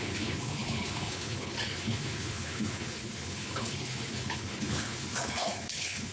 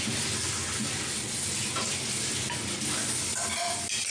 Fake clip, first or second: first